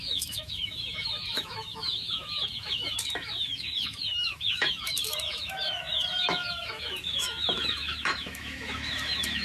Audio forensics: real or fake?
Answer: fake